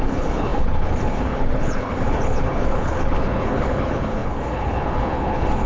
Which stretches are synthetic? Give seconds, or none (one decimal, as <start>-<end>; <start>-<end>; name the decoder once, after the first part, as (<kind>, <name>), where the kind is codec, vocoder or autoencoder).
0.0-5.7 (codec, HILCodec)